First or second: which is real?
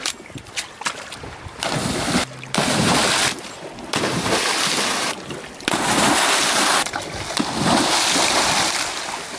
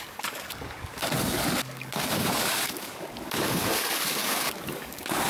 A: first